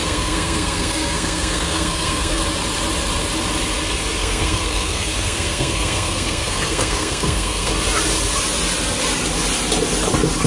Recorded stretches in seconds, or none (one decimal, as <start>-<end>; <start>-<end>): 2.4-4.2; 7.7-10.5